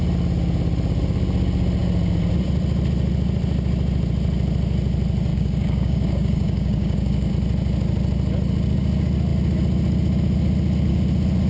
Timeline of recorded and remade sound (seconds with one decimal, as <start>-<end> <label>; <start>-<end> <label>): 0.0-5.3 recorded; 5.3-7.3 remade; 7.3-11.5 recorded